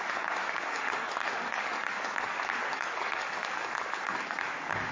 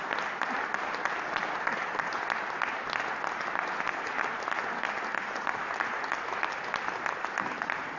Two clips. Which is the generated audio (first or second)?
first